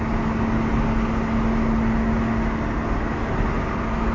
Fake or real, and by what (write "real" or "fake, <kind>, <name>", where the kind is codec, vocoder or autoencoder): real